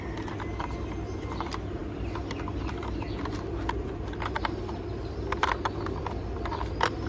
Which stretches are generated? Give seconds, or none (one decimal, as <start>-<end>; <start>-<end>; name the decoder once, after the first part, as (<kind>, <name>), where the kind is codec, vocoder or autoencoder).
none